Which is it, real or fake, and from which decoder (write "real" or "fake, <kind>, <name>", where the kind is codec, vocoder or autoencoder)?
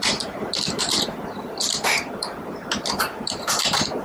fake, vocoder, BigVGAN v2